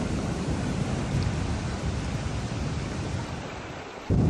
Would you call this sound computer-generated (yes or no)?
no